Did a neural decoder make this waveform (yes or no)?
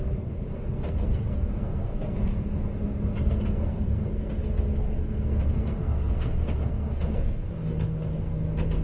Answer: yes